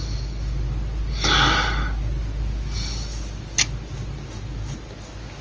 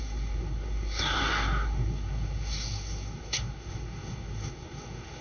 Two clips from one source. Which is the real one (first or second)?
first